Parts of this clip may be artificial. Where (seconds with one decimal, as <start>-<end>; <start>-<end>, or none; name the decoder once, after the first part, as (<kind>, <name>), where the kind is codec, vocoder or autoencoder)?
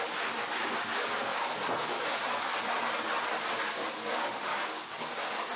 4.5-5.6 (codec, DAC)